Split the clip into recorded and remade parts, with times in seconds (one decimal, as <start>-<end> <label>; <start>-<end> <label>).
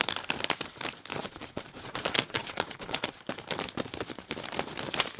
0.0-1.2 recorded; 1.2-3.2 remade; 3.2-5.2 recorded